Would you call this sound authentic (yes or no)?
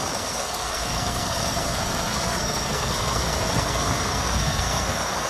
no